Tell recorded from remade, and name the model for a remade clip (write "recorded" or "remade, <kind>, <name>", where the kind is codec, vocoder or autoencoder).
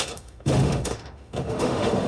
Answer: remade, autoencoder, DAC-VAE